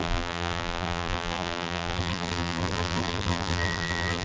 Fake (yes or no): yes